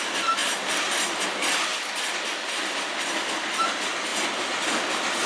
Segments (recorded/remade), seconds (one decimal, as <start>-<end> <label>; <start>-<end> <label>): 0.0-5.3 recorded